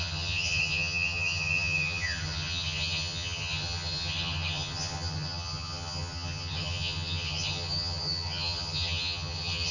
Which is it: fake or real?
fake